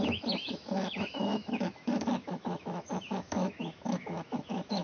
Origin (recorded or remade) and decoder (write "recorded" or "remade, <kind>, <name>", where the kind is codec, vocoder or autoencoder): remade, autoencoder, DAC-VAE